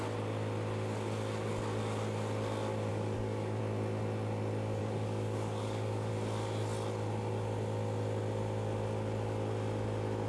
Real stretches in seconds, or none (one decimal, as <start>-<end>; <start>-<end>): 0.0-2.9; 3.6-4.8; 6.1-10.3